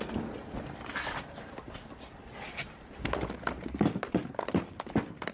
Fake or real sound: real